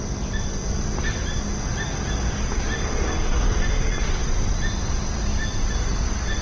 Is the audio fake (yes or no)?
no